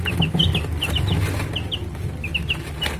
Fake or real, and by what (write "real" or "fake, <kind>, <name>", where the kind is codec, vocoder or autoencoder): real